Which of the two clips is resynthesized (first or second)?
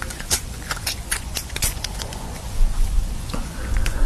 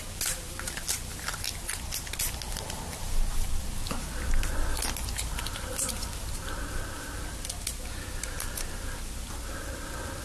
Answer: first